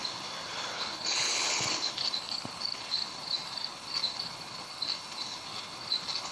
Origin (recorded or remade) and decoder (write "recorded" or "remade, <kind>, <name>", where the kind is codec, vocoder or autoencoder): remade, codec, HILCodec